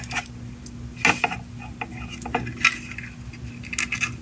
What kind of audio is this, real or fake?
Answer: real